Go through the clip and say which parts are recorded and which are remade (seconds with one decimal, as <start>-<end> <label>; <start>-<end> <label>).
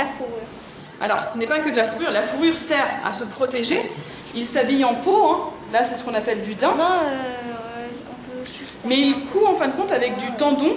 0.0-0.8 recorded; 0.8-2.0 remade; 2.0-2.9 recorded; 2.9-4.1 remade; 4.1-10.8 recorded